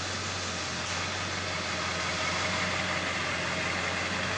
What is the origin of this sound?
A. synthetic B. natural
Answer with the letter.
B